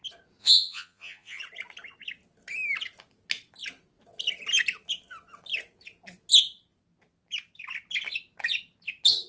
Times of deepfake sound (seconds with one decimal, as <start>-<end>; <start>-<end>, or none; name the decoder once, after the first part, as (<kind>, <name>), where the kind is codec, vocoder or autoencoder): 0.4-1.4 (vocoder, Vocos)